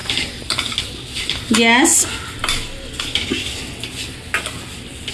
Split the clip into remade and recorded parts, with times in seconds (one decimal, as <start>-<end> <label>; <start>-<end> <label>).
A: 0.0-5.1 recorded